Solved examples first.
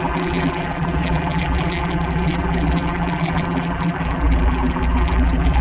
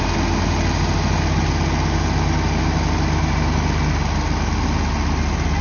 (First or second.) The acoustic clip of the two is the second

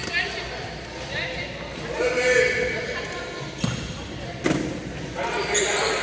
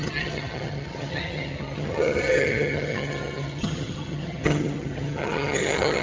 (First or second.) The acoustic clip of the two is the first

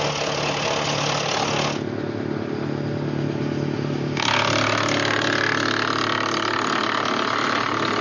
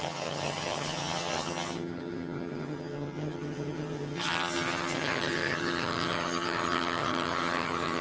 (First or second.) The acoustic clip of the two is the first